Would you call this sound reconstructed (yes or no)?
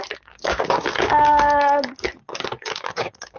yes